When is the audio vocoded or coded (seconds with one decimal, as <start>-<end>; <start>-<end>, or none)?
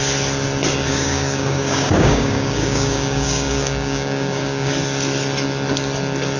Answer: 0.9-4.7